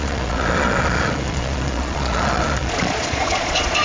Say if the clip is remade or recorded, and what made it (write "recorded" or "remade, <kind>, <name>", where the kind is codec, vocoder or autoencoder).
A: remade, vocoder, Vocos